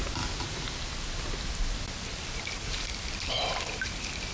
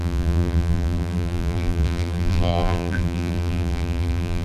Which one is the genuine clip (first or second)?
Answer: first